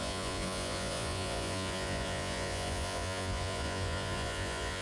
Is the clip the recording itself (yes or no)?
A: no